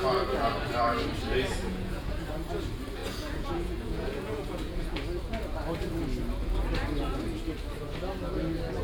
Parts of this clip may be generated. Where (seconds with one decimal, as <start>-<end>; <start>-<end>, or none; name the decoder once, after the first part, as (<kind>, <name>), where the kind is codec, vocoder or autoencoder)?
1.5-2.2 (vocoder, Vocos); 3.0-4.8

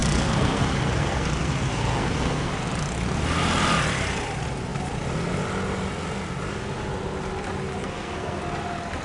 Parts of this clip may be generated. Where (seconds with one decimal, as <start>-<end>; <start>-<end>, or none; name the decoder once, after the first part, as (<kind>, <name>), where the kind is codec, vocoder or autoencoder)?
0.0-2.5 (codec, SNAC); 7.8-8.4

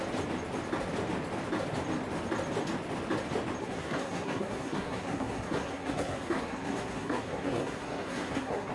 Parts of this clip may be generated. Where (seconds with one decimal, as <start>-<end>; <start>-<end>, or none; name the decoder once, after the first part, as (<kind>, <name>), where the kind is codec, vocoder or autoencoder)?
3.6-8.7 (codec, SNAC)

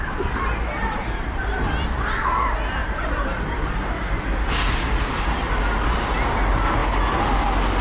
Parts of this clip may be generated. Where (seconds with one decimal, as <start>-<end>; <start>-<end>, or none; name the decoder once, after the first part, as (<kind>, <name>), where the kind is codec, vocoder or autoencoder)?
0.8-1.4 (vocoder, BigVGAN v2); 2.8-3.8